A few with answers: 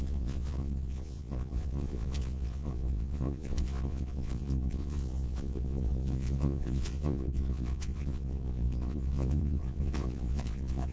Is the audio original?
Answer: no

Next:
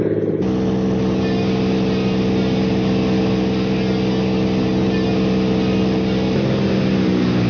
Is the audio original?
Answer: yes